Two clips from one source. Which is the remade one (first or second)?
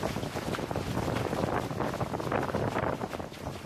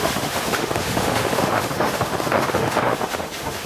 second